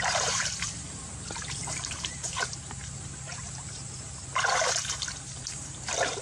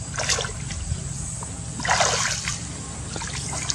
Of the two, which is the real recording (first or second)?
second